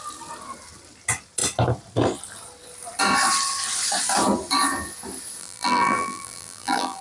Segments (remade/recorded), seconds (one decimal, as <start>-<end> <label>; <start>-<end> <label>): 0.0-5.4 recorded; 5.4-7.0 remade